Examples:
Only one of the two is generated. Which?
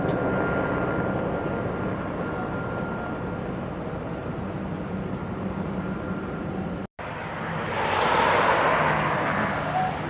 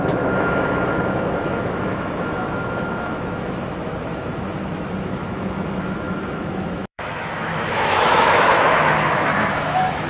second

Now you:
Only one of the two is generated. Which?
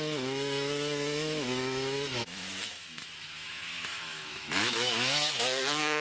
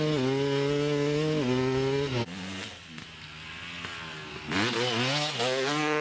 first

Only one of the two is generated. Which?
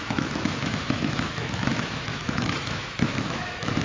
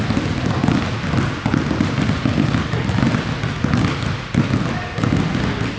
first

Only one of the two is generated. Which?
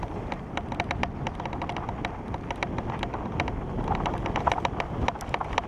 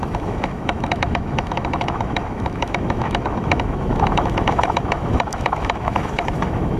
second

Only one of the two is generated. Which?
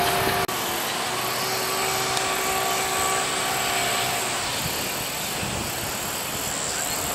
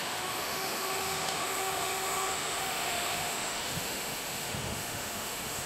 second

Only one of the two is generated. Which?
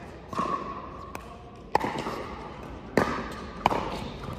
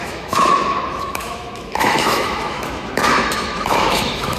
second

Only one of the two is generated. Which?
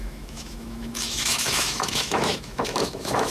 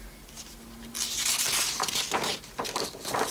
first